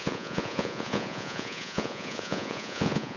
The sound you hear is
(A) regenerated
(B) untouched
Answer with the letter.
A